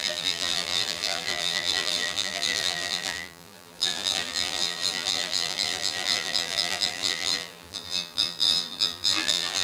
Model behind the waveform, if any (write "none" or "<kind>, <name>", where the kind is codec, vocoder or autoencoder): vocoder, BigVGAN v2